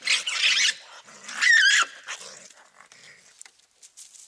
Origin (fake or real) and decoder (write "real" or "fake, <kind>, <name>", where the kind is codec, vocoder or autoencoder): real